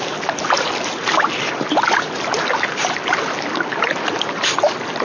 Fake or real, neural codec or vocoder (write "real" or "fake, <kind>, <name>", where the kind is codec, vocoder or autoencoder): real